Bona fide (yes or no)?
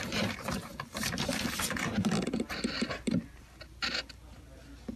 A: yes